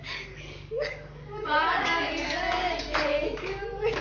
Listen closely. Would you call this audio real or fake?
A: fake